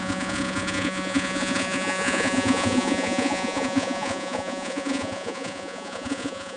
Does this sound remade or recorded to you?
remade